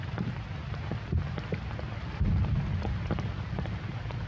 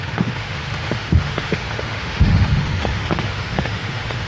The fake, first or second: second